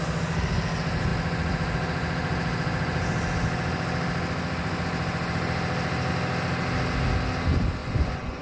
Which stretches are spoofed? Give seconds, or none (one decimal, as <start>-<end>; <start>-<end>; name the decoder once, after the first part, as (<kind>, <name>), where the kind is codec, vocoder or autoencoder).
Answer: 7.8-8.4 (vocoder, Vocos)